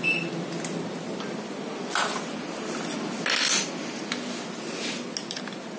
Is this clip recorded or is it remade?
recorded